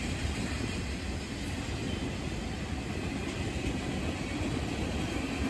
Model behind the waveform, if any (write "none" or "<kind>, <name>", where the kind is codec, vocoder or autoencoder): none